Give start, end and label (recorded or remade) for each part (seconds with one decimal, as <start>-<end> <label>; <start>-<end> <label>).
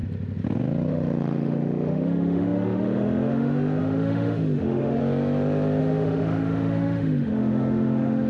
0.0-0.9 recorded; 0.9-5.0 remade; 5.0-5.8 recorded; 5.8-8.3 remade